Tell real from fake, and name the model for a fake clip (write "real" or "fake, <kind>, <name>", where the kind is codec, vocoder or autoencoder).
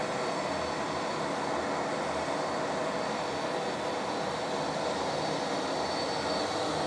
real